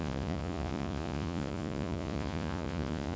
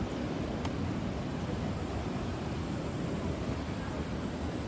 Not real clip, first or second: first